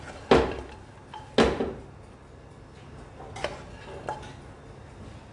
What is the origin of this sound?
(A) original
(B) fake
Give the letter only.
A